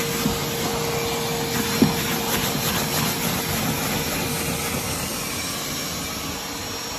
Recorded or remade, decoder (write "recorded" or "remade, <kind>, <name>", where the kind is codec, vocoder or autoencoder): recorded